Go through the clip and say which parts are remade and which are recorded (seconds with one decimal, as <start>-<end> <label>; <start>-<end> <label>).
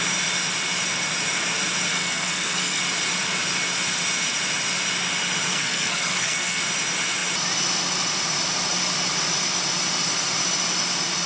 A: 0.0-1.9 recorded; 1.9-2.8 remade; 2.8-5.5 recorded; 5.5-6.6 remade; 6.6-11.3 recorded